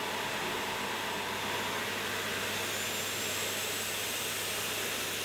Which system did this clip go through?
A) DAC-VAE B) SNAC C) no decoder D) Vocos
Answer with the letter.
C